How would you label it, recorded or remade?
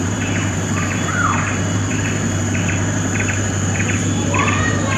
remade